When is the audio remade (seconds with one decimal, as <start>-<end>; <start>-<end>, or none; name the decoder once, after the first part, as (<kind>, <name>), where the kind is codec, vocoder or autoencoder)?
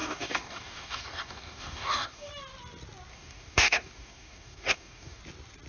0.0-2.3 (codec, DAC); 3.1-5.2